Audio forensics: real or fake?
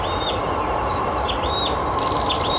real